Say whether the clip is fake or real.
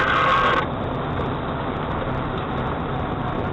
real